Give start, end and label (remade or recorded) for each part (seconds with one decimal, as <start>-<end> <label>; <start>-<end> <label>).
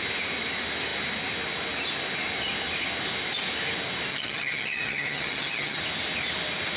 0.0-4.1 recorded; 4.1-5.8 remade; 5.8-6.8 recorded